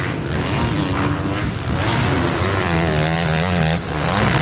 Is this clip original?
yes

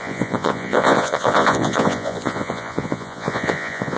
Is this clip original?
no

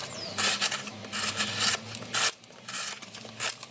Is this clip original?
yes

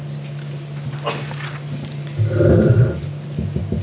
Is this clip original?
yes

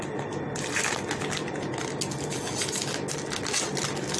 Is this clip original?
yes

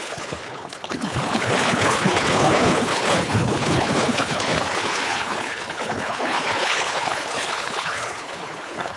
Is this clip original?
no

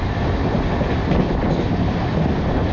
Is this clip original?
yes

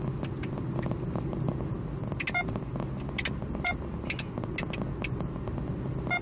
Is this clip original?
yes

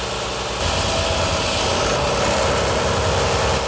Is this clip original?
yes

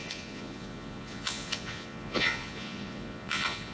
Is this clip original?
no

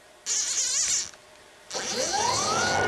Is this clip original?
yes